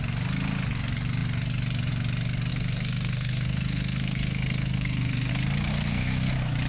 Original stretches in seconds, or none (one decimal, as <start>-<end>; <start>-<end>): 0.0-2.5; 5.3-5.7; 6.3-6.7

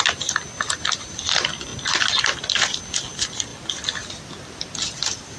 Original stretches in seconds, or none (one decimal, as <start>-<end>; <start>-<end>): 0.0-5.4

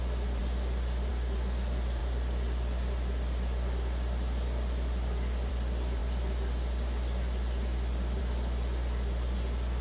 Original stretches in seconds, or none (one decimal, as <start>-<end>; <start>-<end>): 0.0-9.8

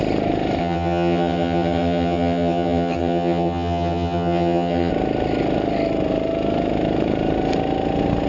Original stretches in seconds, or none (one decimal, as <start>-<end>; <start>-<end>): 0.0-0.6; 4.9-8.3